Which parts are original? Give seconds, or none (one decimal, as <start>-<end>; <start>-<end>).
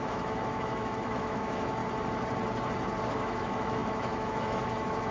1.8-3.1